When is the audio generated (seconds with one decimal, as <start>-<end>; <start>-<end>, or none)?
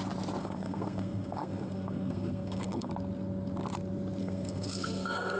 0.4-2.9; 4.2-5.4